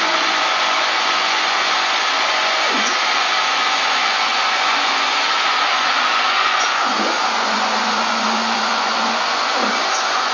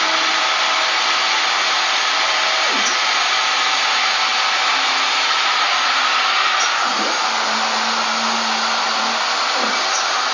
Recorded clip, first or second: second